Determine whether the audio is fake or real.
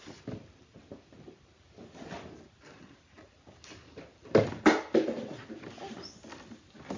real